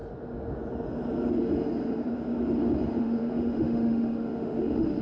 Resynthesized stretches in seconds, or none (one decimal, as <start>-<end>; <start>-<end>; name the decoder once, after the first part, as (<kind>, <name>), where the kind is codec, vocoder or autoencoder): 3.0-5.0 (autoencoder, DAC-VAE)